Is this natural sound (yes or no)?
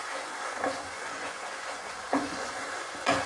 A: no